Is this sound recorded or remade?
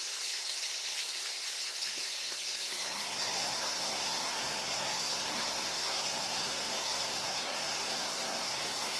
remade